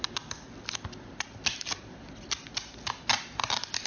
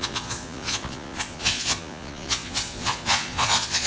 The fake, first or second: second